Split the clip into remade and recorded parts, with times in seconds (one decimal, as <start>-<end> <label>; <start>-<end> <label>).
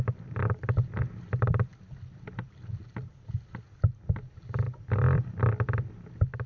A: 0.0-6.5 recorded